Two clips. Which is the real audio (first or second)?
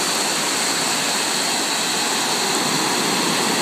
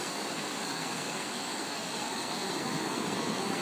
first